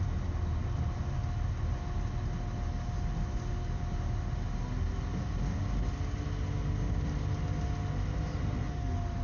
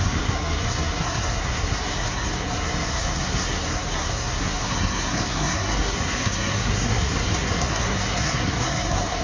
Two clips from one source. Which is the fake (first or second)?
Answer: second